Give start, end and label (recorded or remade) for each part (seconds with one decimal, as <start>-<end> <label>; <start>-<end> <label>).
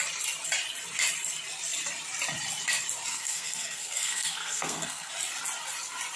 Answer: 0.0-3.1 recorded; 3.1-5.1 remade; 5.1-6.2 recorded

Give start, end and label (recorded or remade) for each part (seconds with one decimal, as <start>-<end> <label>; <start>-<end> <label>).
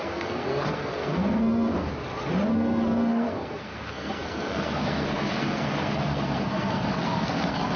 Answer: 0.0-1.9 remade; 1.9-2.5 recorded; 2.5-7.8 remade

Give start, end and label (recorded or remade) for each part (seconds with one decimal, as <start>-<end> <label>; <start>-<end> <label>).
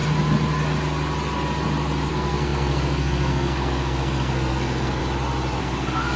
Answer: 0.0-2.1 recorded; 2.1-5.0 remade; 5.0-5.6 recorded; 5.6-6.2 remade